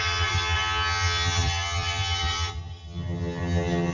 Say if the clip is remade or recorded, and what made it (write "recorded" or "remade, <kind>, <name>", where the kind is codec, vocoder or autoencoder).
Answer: remade, vocoder, HiFi-GAN